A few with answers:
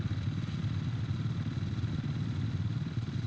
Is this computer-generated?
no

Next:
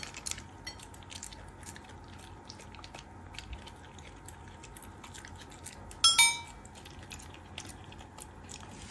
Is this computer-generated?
no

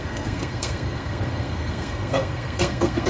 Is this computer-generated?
yes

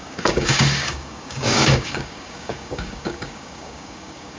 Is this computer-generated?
yes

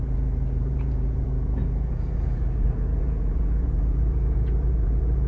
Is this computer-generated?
yes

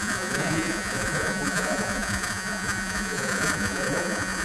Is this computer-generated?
yes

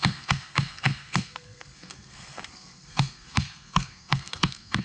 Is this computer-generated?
yes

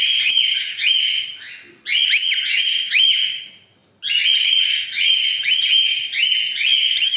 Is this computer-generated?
no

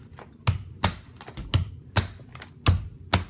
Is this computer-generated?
no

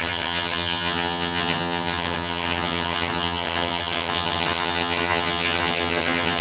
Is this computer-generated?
yes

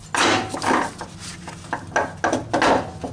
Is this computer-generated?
no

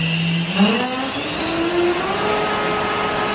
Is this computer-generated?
no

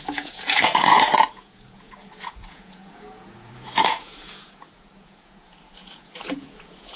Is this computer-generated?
yes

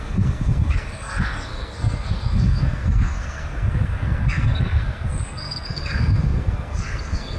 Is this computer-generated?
yes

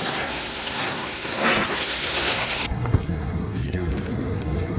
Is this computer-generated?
yes